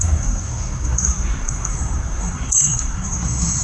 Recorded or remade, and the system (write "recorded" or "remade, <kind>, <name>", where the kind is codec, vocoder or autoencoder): remade, codec, SNAC